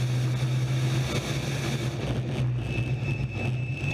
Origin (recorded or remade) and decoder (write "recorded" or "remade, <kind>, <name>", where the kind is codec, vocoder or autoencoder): recorded